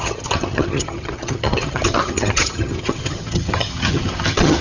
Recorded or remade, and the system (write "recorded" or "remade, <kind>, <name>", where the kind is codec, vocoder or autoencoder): remade, vocoder, HiFi-GAN